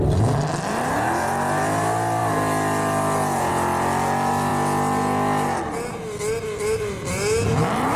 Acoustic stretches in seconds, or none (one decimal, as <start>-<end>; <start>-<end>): 0.0-7.5